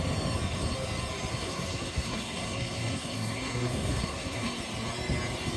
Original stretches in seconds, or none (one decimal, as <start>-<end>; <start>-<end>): 0.0-1.3; 4.6-5.6